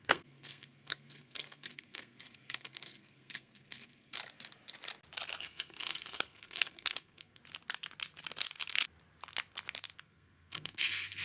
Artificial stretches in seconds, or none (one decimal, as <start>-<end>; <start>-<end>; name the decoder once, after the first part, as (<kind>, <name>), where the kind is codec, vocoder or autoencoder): 0.0-4.2 (codec, SNAC); 5.4-7.4; 10.0-11.2